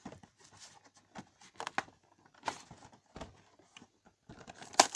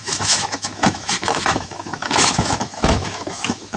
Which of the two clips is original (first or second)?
first